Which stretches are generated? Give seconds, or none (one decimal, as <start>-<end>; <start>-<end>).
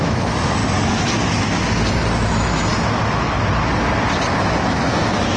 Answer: 0.0-0.6; 2.1-2.7; 4.4-5.4